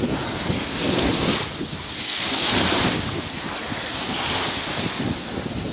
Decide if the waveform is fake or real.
real